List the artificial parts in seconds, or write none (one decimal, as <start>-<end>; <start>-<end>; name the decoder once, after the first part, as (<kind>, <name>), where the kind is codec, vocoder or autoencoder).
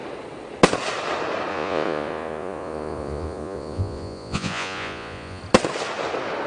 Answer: 1.5-5.4 (vocoder, Vocos)